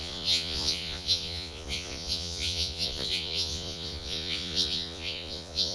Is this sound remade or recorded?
remade